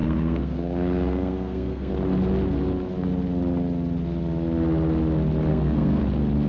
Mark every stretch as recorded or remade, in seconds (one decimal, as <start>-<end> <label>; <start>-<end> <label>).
0.0-1.9 remade; 1.9-5.5 recorded; 5.5-6.0 remade; 6.0-6.5 recorded